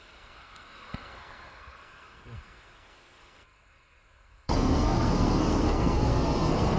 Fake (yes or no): yes